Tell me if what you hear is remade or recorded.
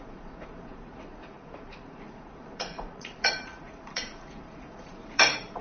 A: remade